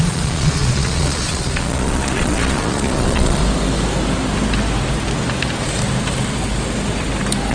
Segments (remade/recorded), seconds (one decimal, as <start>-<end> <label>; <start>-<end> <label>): 0.0-3.4 remade; 3.4-7.5 recorded